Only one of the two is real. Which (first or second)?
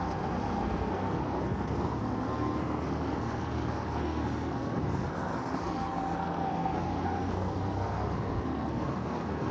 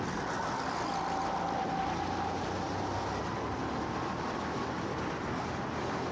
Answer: second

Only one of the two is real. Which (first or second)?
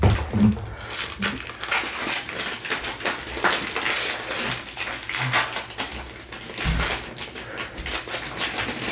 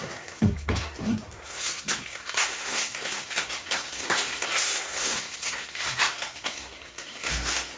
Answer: first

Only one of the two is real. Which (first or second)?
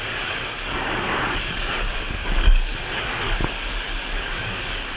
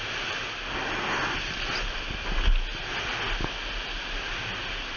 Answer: second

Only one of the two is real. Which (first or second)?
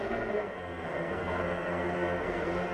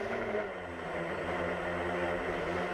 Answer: second